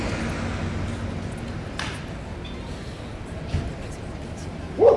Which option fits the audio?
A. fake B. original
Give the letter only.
B